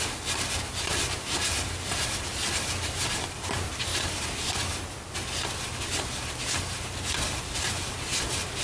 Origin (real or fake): real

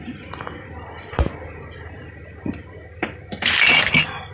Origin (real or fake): real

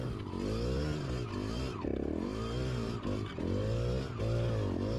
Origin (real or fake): real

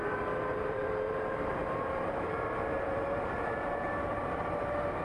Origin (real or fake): fake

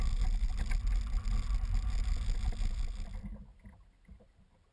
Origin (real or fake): real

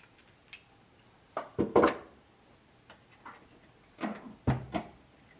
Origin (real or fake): real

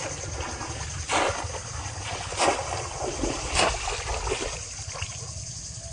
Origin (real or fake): real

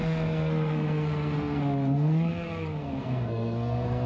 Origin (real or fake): fake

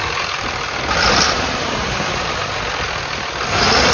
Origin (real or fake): real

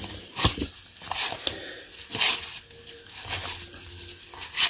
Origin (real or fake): real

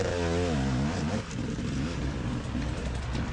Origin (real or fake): real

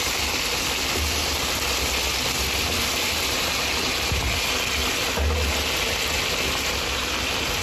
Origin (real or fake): real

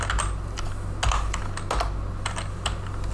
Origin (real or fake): real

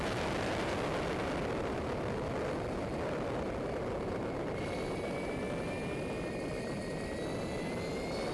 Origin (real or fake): real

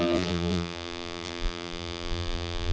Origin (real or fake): fake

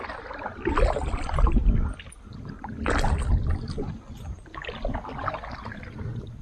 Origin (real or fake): real